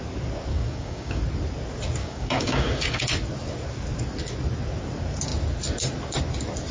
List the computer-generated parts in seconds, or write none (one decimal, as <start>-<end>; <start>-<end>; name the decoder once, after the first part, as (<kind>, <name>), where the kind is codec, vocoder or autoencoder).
0.5-1.2 (codec, DAC); 2.0-3.0